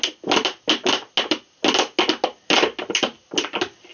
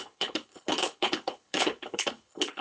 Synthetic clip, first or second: second